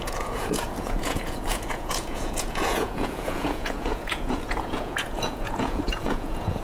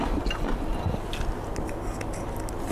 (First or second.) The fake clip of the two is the first